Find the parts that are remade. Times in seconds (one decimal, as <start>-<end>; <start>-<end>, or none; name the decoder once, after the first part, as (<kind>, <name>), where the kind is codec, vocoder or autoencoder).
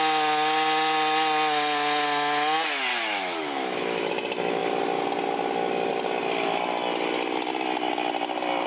2.9-4.1 (autoencoder, DAC-VAE)